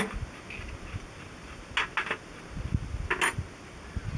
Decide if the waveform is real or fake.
real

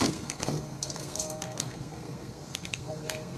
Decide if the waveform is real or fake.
fake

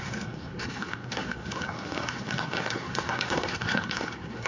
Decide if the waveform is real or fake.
fake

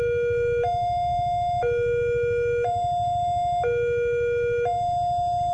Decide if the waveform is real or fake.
real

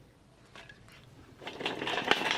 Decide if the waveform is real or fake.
real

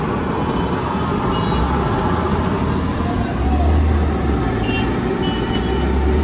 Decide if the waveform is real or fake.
real